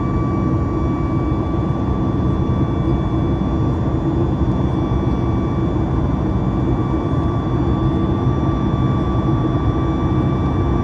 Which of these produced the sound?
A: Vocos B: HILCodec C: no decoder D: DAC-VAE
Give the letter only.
C